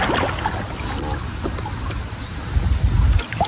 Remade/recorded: recorded